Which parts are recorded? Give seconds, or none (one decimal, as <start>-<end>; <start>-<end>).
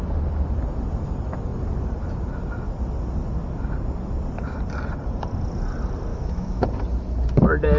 0.0-6.1; 6.6-7.8